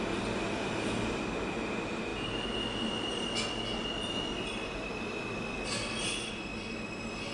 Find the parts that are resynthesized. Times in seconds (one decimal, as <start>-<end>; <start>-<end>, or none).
none